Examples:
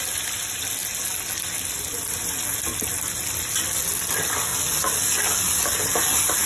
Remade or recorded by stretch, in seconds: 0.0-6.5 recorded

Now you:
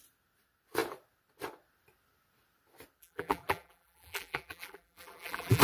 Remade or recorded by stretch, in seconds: 0.0-3.0 recorded; 3.0-5.6 remade

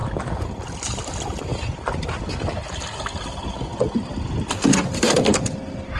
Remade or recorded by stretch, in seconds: 0.0-6.0 recorded